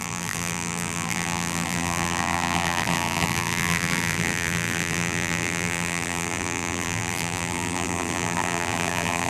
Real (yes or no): no